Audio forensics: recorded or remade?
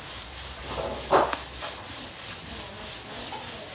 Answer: recorded